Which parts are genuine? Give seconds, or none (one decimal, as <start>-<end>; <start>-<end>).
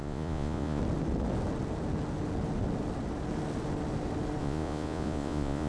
0.8-4.4